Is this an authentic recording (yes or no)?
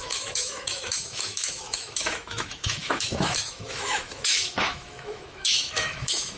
no